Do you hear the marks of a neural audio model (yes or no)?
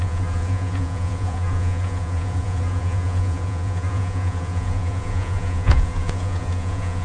yes